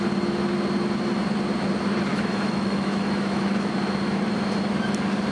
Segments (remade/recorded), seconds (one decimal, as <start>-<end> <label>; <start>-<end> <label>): 0.0-2.1 recorded; 2.1-3.7 remade; 3.7-5.3 recorded